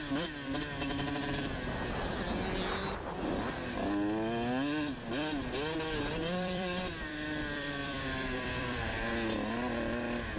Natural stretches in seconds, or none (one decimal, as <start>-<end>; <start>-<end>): 0.0-6.2; 9.1-10.4